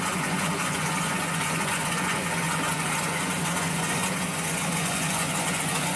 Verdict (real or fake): fake